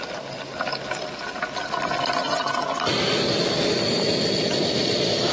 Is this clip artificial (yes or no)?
no